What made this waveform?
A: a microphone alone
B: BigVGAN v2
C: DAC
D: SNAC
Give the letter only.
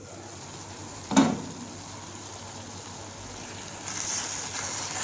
A